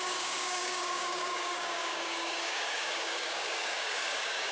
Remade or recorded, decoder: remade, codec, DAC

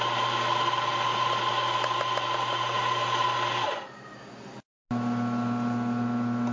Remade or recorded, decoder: recorded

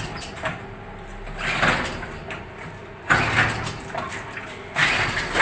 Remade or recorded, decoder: recorded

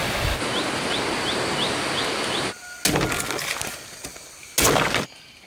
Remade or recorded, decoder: recorded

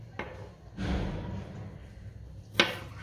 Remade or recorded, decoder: recorded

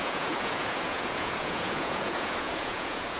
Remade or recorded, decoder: remade, vocoder, Vocos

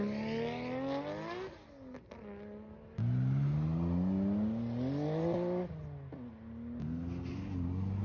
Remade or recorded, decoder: recorded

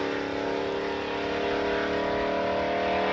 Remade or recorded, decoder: recorded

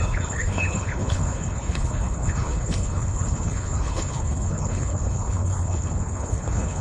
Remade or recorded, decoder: remade, codec, HILCodec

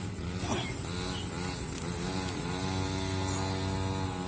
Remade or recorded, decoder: recorded